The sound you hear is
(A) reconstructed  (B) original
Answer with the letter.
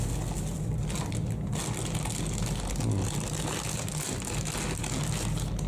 B